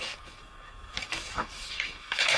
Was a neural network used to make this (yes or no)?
yes